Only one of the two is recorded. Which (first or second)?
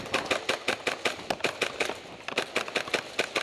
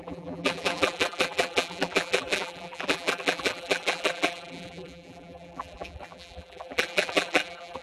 first